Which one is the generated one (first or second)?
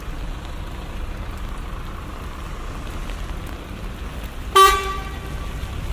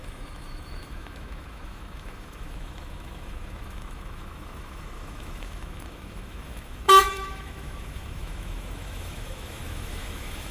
second